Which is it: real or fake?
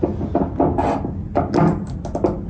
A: real